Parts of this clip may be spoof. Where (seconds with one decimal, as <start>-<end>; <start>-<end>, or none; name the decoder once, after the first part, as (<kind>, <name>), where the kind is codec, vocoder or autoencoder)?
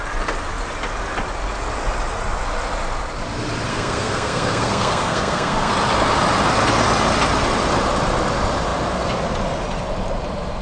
3.7-5.7 (codec, SNAC)